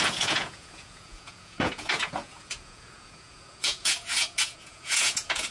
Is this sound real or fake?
fake